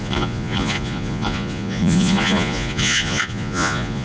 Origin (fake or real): fake